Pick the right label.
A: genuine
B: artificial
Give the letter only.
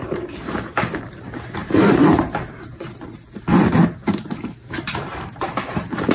B